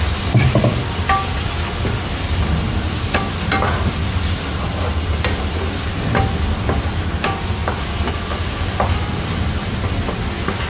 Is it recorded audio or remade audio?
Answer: recorded